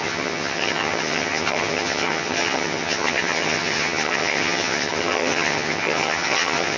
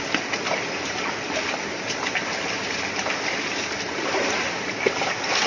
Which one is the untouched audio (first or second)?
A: second